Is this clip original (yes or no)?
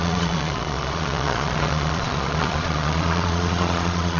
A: no